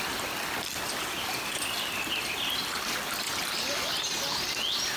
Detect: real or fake real